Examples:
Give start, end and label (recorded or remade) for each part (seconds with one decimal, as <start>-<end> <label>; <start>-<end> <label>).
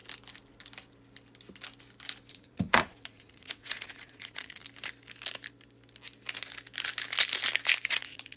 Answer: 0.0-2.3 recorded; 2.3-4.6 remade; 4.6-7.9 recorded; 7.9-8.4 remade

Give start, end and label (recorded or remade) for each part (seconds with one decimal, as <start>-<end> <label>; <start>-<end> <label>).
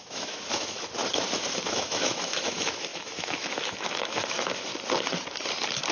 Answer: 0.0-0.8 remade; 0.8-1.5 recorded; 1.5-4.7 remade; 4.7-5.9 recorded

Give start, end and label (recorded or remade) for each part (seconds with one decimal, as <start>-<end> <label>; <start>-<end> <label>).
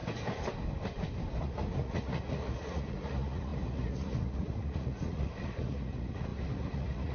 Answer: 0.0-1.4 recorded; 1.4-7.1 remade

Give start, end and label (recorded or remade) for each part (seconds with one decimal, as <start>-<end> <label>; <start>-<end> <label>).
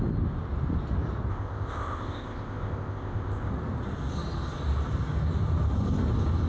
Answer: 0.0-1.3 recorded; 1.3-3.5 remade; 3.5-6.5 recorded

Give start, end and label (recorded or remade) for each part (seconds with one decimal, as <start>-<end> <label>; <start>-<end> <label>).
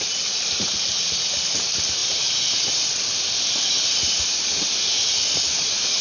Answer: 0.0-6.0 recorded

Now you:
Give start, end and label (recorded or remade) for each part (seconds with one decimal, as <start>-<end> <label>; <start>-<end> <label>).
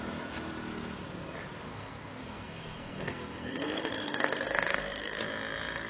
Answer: 0.0-1.7 recorded; 1.7-5.2 remade; 5.2-5.9 recorded